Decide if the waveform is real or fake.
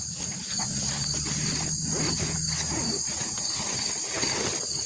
real